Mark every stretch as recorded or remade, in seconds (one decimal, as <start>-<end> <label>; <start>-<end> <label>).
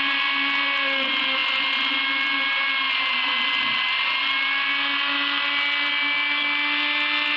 0.0-7.4 recorded